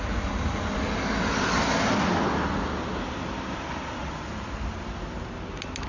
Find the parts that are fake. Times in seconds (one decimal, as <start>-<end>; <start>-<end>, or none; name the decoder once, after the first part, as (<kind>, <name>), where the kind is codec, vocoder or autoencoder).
none